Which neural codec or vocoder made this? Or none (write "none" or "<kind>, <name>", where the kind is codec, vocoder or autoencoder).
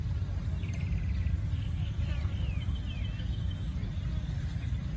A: none